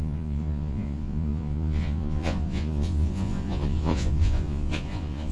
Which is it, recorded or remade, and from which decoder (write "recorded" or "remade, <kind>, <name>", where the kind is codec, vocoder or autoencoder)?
remade, vocoder, Vocos